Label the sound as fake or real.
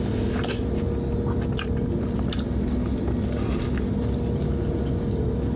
real